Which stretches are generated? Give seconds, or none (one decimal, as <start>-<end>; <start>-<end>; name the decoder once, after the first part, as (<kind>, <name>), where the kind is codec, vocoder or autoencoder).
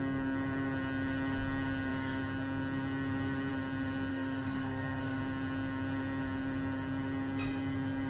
4.1-5.2 (codec, SNAC)